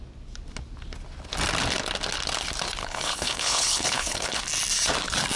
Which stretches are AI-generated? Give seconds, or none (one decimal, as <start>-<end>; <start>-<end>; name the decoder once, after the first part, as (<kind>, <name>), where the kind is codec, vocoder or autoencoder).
2.8-4.4 (codec, HILCodec)